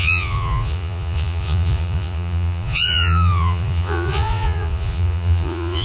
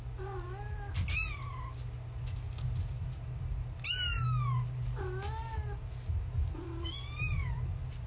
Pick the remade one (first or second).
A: first